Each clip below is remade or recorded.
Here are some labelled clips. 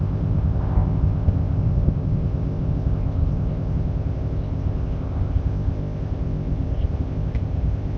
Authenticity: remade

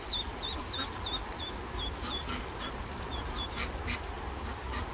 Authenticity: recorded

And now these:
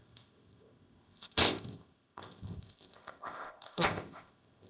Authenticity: remade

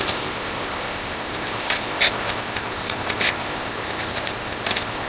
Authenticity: remade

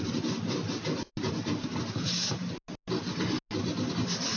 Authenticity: recorded